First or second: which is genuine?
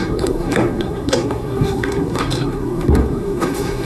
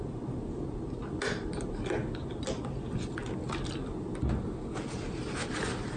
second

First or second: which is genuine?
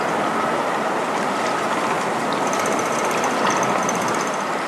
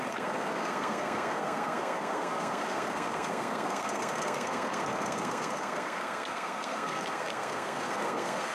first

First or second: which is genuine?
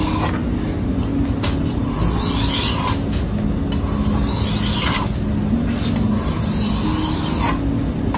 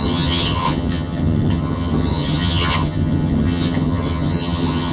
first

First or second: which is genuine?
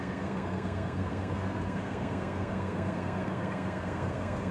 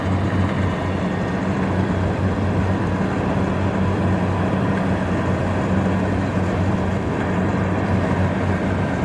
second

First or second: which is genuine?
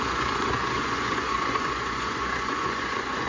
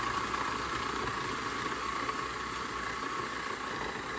second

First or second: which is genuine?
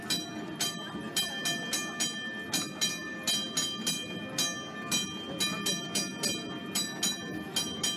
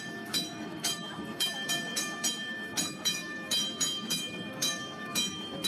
first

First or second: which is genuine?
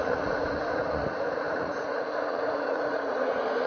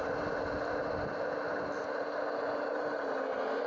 second